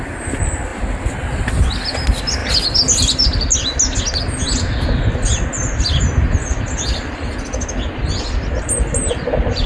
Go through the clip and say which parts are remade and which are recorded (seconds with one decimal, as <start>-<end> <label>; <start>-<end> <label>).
0.0-9.7 recorded